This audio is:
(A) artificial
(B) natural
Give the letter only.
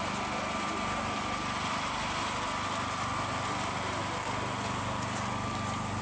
B